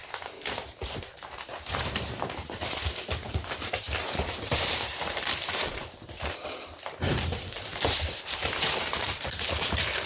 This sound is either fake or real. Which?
fake